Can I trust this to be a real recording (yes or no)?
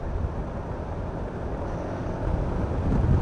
yes